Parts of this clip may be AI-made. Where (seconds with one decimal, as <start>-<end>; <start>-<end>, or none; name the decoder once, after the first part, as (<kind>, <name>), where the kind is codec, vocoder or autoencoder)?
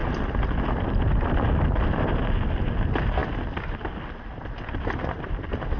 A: none